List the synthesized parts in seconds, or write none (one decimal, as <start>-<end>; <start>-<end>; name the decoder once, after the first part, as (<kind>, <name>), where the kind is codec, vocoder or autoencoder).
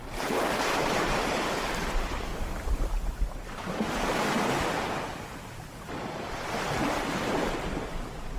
0.0-2.3 (vocoder, BigVGAN v2); 3.0-4.3; 5.0-8.4